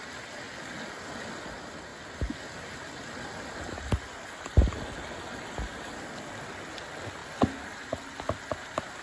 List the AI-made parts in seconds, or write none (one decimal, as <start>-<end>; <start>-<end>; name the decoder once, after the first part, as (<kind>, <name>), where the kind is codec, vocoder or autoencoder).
none